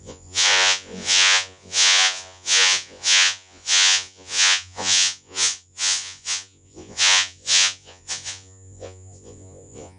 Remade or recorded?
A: remade